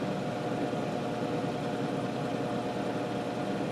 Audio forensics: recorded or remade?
recorded